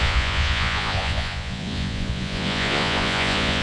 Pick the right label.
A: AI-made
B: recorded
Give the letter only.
A